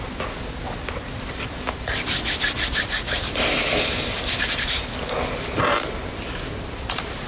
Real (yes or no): yes